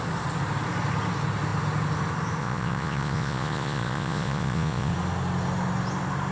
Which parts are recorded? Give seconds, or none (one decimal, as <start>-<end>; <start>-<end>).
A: 0.0-2.4; 4.9-6.3